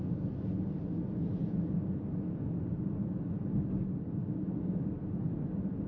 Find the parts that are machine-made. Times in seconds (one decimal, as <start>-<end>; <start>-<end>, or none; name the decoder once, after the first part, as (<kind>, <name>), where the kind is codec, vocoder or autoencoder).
4.2-4.8 (codec, DAC)